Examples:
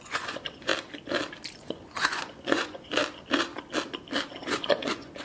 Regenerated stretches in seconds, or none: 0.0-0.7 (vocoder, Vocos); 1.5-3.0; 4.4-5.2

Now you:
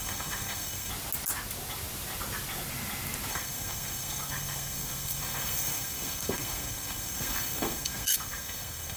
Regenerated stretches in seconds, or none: 0.0-0.9 (codec, SNAC); 3.3-9.0

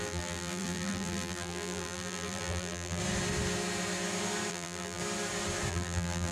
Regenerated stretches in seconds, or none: 0.0-3.0 (vocoder, BigVGAN v2); 4.5-5.0; 5.7-6.3

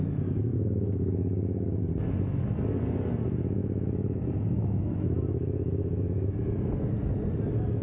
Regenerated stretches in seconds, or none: 0.5-1.8 (autoencoder, DAC-VAE); 3.6-6.3

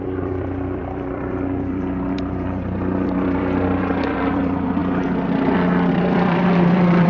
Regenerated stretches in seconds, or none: 0.0-4.8 (vocoder, BigVGAN v2); 5.9-7.1

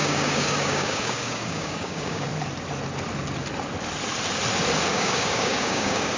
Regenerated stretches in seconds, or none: 0.0-2.3 (codec, DAC); 4.9-6.2